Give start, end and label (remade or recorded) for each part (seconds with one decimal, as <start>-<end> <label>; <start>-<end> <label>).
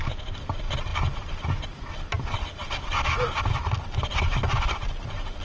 0.0-5.4 recorded